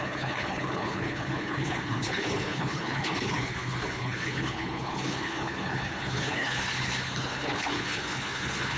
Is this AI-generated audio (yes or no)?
yes